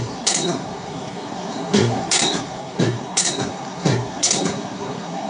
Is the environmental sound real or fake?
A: fake